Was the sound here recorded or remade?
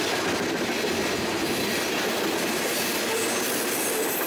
recorded